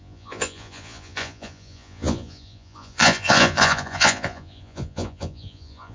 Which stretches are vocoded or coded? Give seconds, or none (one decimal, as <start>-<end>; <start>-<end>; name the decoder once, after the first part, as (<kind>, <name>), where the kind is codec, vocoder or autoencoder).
0.0-5.9 (vocoder, Vocos)